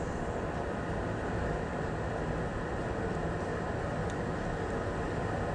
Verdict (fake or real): real